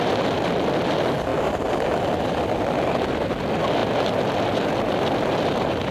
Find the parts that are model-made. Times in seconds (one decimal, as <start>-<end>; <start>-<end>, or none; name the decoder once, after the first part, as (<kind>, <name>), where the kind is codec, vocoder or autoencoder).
none